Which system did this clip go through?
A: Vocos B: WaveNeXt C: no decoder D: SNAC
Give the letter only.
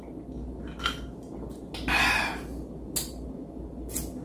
C